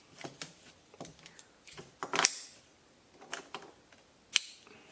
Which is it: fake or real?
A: real